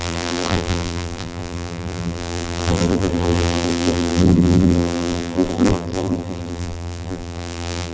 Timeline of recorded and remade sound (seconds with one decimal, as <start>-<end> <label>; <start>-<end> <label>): 0.0-7.9 remade